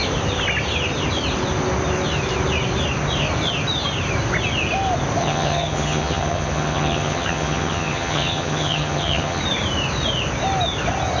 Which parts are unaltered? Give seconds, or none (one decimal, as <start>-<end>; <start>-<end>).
0.0-5.2; 9.4-11.2